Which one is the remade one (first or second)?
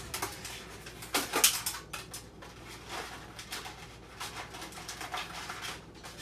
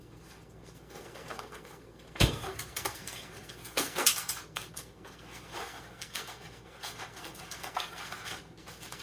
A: second